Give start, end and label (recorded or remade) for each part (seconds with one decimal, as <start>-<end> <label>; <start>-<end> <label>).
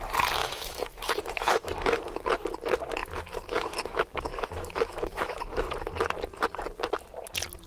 0.0-0.4 recorded; 0.4-2.3 remade; 2.3-3.0 recorded; 3.0-5.4 remade; 5.4-7.7 recorded